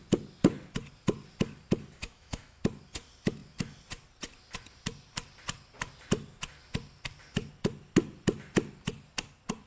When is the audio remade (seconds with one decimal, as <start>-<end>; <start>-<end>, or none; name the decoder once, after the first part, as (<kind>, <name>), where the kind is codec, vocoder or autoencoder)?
2.0-2.6 (autoencoder, DAC-VAE)